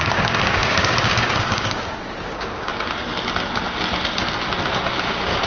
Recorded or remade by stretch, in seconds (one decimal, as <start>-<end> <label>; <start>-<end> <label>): 0.0-2.7 remade; 2.7-5.0 recorded; 5.0-5.5 remade